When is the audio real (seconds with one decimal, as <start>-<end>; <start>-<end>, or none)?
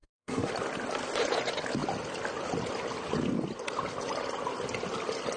0.5-5.4